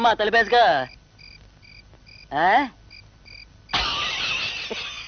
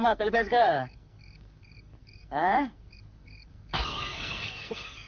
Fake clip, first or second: second